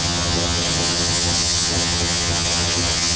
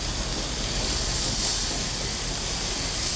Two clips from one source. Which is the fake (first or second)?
first